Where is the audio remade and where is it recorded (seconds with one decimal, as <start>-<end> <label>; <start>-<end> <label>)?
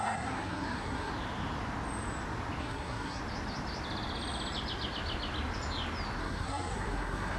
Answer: 0.0-1.1 remade; 1.1-2.6 recorded; 2.6-3.2 remade; 3.2-6.2 recorded; 6.2-7.4 remade